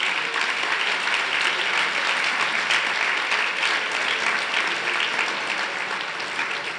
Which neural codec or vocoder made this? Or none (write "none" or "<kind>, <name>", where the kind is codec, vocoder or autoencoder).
none